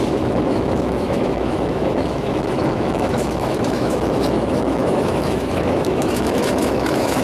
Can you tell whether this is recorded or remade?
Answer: remade